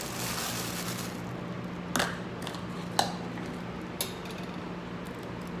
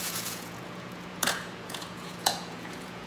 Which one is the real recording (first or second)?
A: first